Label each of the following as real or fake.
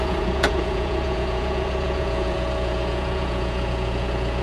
fake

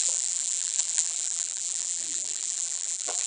fake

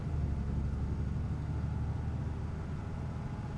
real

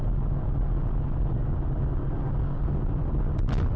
real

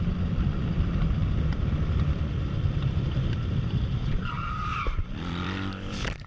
fake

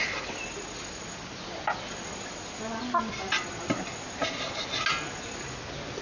real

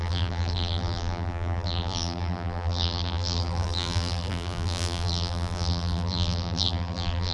fake